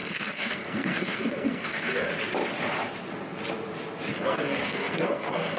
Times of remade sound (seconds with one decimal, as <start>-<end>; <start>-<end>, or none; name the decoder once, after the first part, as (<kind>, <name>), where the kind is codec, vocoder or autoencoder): 0.0-2.1 (codec, SNAC); 4.1-5.6